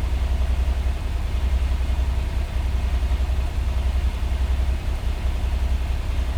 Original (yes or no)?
yes